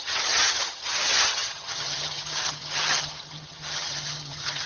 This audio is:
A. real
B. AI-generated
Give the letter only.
B